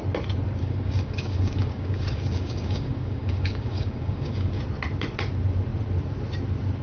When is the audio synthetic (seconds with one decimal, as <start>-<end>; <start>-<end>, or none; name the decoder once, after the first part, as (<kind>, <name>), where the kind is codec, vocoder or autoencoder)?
0.6-4.6 (codec, DAC)